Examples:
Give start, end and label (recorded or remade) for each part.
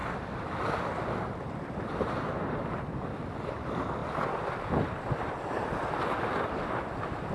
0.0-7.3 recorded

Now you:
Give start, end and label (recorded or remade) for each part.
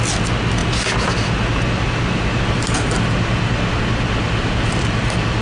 0.0-5.4 recorded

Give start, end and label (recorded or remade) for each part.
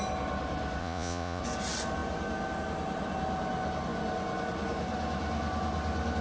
0.0-0.8 recorded; 0.8-1.4 remade; 1.4-6.2 recorded